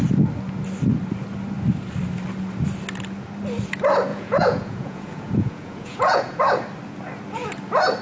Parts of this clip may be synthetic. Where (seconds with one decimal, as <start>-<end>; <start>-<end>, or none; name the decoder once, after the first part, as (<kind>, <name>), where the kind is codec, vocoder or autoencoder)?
4.1-6.4 (vocoder, Vocos)